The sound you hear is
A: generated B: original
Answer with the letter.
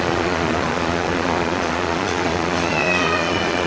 A